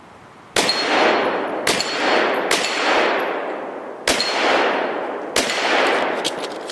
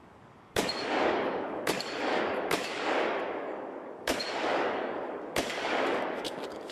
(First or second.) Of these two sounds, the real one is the first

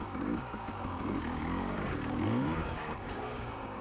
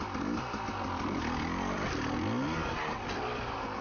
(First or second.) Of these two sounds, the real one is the second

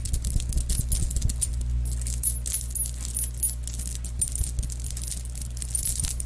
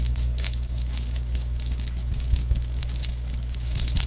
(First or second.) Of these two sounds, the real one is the first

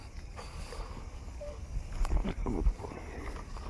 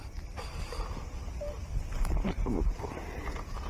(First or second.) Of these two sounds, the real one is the second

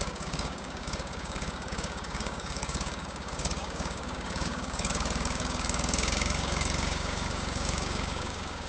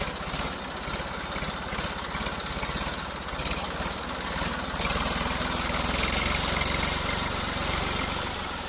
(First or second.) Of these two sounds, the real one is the second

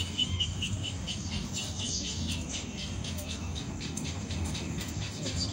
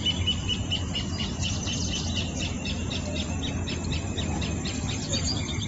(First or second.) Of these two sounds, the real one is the second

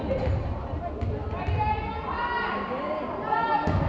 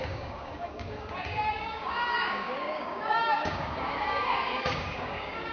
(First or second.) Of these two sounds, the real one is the first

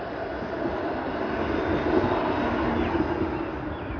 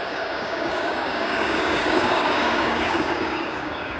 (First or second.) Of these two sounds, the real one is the first